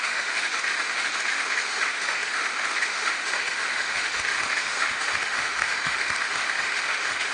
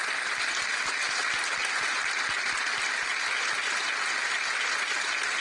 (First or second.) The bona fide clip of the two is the second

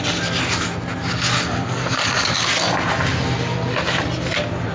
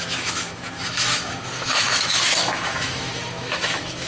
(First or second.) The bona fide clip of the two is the first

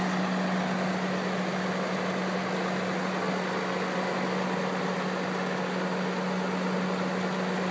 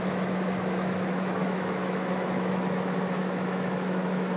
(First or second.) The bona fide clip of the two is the first